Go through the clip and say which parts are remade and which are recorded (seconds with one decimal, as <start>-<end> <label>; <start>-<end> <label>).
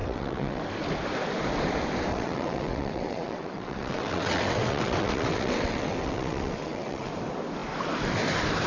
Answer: 0.0-0.6 remade; 0.6-2.1 recorded; 2.1-7.1 remade; 7.1-8.7 recorded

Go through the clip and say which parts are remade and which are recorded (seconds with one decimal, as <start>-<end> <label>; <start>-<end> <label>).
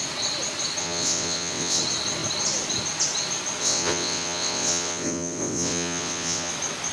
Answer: 0.0-0.8 recorded; 0.8-1.8 remade; 1.8-3.6 recorded; 3.6-6.5 remade; 6.5-6.9 recorded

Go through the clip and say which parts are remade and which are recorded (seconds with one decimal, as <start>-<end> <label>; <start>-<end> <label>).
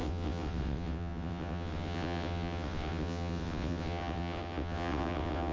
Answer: 0.0-5.5 remade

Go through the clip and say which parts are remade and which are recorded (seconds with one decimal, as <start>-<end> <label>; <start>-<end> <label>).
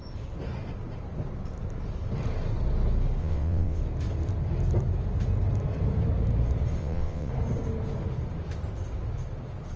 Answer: 0.0-3.2 recorded; 3.2-3.8 remade; 3.8-6.8 recorded; 6.8-7.3 remade; 7.3-9.8 recorded